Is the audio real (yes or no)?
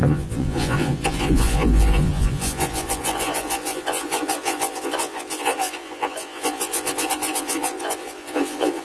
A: no